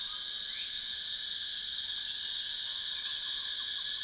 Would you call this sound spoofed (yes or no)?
no